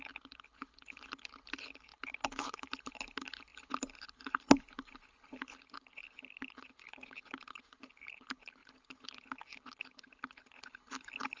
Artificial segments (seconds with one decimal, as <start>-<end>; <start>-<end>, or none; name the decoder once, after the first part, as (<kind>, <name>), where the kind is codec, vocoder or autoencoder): 0.0-11.4 (codec, HILCodec)